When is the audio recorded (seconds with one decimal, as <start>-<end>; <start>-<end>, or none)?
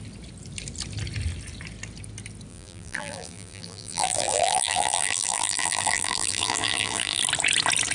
0.0-2.5; 7.2-7.9